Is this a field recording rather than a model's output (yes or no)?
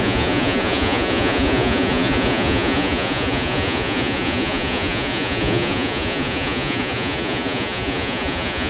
no